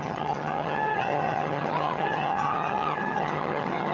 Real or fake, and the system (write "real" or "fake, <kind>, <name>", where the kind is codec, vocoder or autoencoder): fake, vocoder, HiFi-GAN